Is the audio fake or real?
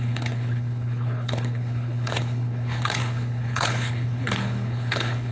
fake